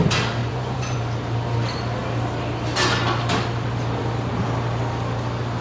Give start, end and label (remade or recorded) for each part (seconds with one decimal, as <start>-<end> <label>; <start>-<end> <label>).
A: 0.0-0.4 recorded; 0.4-1.0 remade; 1.0-5.6 recorded